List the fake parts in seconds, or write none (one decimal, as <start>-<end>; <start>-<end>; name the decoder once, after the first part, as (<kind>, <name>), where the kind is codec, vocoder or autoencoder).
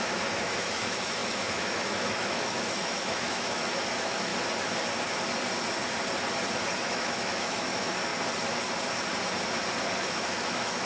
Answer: 0.0-4.3 (autoencoder, DAC-VAE); 6.9-8.1; 10.0-10.9